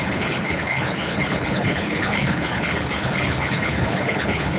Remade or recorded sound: remade